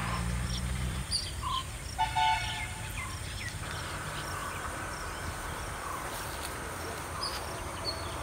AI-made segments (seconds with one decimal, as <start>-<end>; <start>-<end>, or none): 0.6-1.6; 3.5-8.2